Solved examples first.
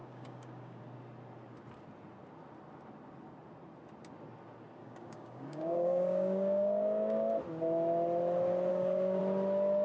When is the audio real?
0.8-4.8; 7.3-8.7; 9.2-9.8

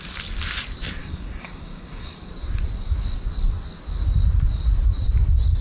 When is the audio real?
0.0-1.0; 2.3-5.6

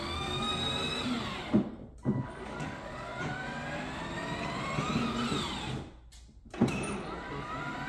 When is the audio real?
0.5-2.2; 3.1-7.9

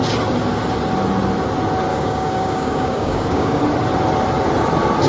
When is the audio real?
0.0-1.9; 3.6-5.1

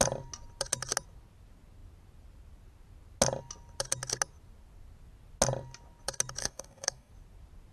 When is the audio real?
0.0-6.4; 7.1-7.7

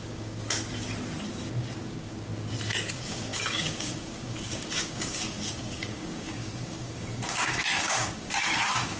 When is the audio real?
0.4-1.8; 2.3-2.9

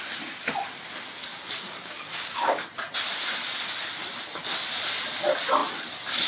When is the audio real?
0.0-1.3; 2.7-6.3

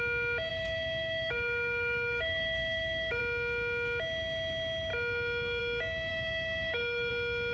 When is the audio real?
0.0-0.5; 3.2-6.1; 7.1-7.5